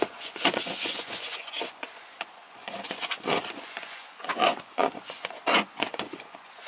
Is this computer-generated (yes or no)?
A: yes